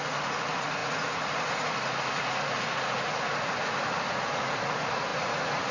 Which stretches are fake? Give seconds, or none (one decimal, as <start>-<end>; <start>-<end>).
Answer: 0.0-5.7